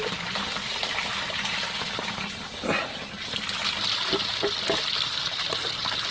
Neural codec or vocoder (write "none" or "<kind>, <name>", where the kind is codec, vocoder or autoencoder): none